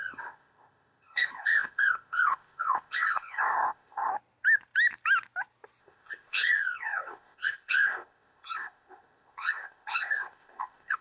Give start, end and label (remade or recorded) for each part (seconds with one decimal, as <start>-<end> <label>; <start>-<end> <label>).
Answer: 0.0-4.1 remade; 4.1-5.8 recorded; 5.8-11.0 remade